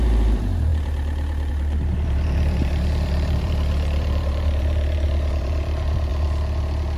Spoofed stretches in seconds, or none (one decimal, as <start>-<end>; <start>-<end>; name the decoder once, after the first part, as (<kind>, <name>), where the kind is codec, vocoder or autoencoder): 0.0-6.1 (vocoder, BigVGAN v2)